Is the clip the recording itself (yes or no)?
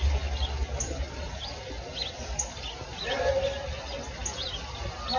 yes